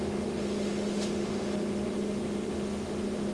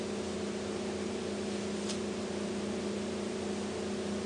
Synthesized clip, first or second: first